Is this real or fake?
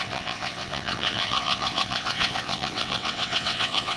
fake